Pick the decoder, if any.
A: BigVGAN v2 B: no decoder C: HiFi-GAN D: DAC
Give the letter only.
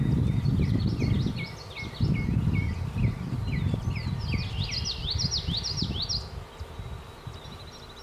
B